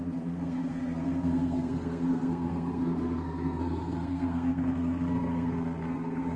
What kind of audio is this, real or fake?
fake